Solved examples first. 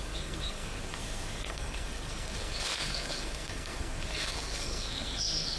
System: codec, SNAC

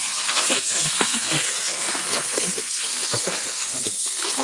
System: codec, SNAC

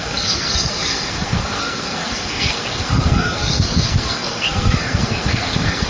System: codec, SNAC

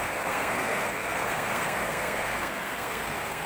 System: codec, SNAC